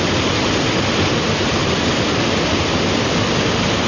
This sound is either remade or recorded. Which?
recorded